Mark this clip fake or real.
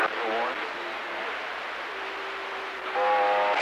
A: real